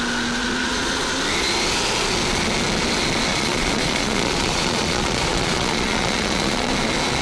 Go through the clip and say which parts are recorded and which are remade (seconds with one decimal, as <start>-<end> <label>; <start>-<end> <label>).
0.0-0.4 recorded; 0.4-1.1 remade; 1.1-3.3 recorded; 3.3-6.7 remade; 6.7-7.2 recorded